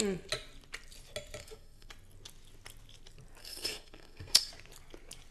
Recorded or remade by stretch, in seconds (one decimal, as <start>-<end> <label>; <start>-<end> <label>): 0.0-1.4 recorded; 1.4-1.9 remade; 1.9-3.4 recorded; 3.4-4.5 remade; 4.5-5.3 recorded